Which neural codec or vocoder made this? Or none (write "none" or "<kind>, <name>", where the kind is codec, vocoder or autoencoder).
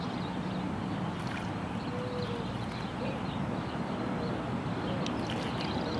none